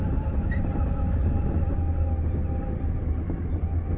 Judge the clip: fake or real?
real